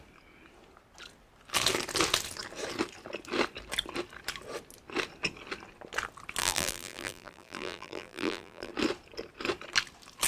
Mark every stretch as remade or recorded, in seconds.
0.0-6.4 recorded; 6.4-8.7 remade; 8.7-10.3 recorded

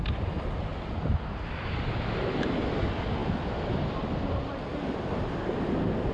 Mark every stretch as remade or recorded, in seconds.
0.0-0.7 recorded; 0.7-1.8 remade; 1.8-3.2 recorded; 3.2-5.0 remade; 5.0-6.1 recorded

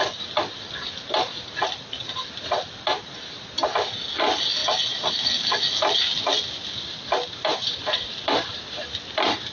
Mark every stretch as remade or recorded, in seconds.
0.0-1.3 recorded; 1.3-2.3 remade; 2.3-4.6 recorded; 4.6-5.2 remade; 5.2-6.0 recorded; 6.0-8.5 remade; 8.5-9.5 recorded

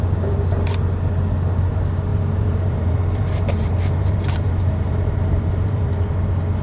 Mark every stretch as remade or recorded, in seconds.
0.0-2.1 recorded; 2.1-6.1 remade; 6.1-6.6 recorded